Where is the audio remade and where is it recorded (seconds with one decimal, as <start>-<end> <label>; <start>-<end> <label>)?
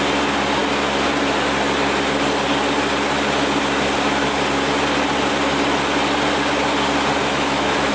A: 0.0-7.2 recorded; 7.2-7.9 remade